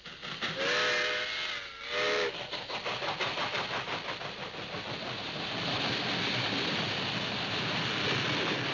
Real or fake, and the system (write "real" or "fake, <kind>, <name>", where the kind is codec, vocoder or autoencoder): real